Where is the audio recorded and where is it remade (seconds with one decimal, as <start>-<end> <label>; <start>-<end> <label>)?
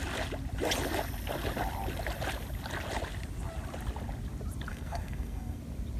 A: 0.0-4.7 recorded; 4.7-5.6 remade; 5.6-6.0 recorded